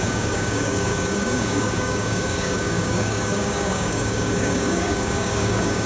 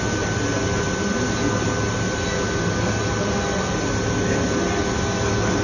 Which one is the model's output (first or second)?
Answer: first